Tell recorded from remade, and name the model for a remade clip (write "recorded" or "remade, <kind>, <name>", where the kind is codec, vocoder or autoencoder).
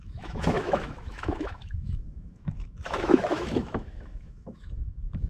remade, autoencoder, DAC-VAE